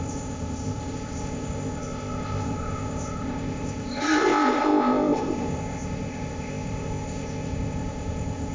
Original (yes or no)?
no